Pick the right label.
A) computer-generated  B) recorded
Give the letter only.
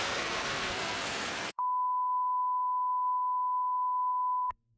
A